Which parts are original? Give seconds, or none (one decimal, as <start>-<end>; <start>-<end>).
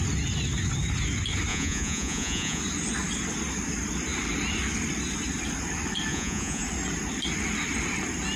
0.0-1.5; 2.6-6.1; 6.6-8.4